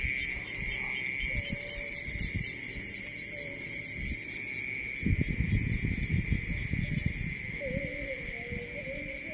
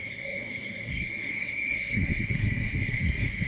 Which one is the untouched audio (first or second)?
first